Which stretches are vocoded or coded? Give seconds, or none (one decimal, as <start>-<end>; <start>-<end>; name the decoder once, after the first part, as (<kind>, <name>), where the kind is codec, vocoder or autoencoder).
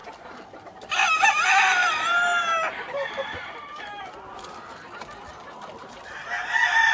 0.0-0.6 (vocoder, BigVGAN v2); 1.8-5.9